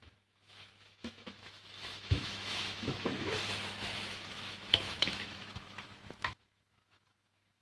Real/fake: fake